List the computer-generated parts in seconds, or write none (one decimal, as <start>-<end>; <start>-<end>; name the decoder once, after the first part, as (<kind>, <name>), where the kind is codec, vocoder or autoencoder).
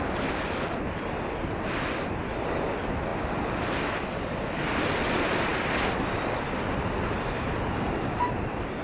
none